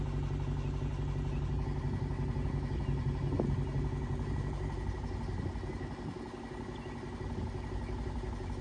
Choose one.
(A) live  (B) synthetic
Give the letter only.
A